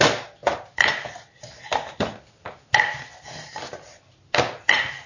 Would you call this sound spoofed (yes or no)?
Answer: no